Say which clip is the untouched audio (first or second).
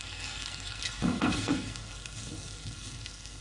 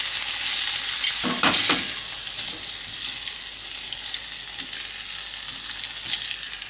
second